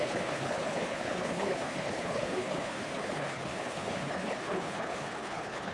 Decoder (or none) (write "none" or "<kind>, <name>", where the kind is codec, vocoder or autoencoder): codec, HILCodec